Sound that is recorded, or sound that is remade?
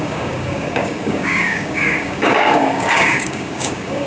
remade